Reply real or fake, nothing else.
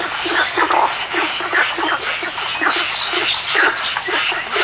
real